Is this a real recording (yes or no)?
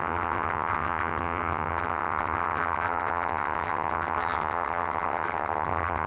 no